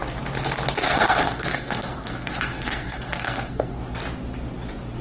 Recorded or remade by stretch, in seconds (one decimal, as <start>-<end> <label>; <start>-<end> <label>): 0.0-0.8 recorded; 0.8-3.8 remade; 3.8-5.0 recorded